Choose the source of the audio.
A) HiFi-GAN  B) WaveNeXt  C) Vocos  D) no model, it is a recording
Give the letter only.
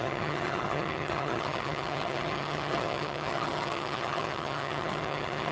A